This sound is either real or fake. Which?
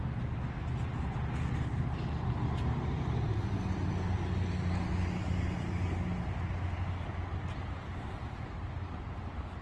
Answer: real